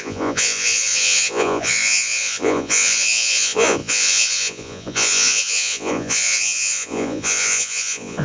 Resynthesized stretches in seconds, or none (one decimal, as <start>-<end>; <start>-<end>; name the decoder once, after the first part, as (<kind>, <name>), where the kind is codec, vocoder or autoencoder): 0.0-8.2 (vocoder, Vocos)